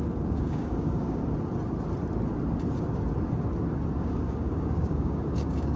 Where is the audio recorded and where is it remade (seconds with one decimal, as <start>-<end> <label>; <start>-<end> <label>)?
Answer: 0.0-1.2 remade; 1.2-4.0 recorded; 4.0-5.8 remade